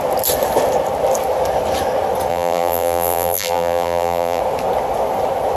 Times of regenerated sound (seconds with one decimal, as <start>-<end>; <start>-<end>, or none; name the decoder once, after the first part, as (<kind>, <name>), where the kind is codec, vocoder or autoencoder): 2.3-4.4 (vocoder, BigVGAN v2)